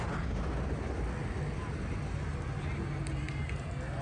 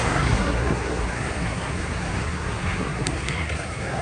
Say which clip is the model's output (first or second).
second